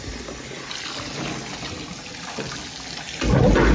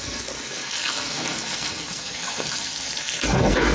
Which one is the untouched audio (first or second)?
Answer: first